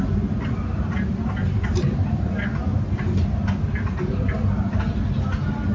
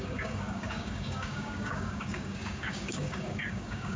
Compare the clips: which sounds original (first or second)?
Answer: first